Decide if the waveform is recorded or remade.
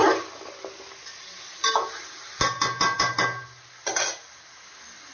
recorded